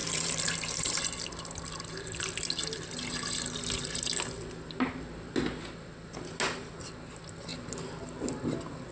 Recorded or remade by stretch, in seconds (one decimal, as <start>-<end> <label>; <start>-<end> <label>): 0.0-1.0 remade; 1.0-7.5 recorded; 7.5-8.4 remade; 8.4-8.9 recorded